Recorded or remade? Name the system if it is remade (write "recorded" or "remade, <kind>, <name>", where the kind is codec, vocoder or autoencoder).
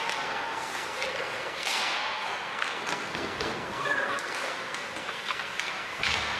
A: remade, codec, SNAC